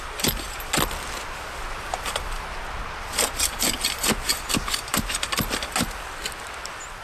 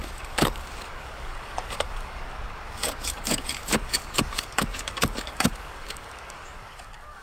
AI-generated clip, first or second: second